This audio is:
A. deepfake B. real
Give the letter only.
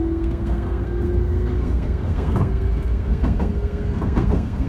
A